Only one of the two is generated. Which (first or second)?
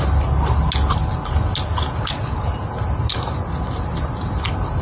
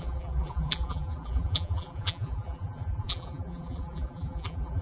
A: second